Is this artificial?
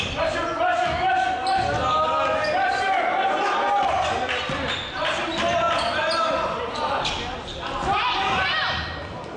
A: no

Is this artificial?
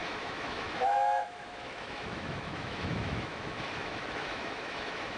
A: yes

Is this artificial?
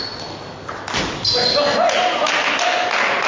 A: no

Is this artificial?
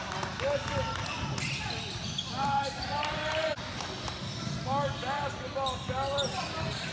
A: no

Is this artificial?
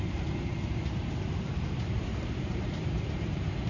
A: yes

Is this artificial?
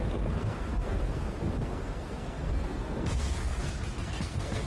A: yes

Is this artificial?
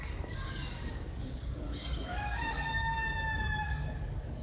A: yes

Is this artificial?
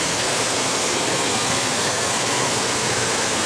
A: yes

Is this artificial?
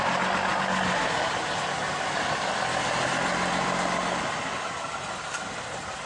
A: no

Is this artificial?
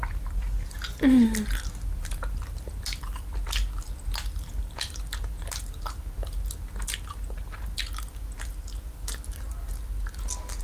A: no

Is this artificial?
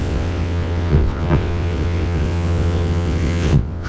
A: yes